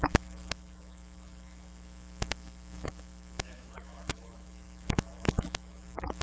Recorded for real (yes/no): no